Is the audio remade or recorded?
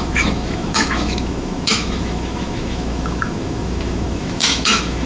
remade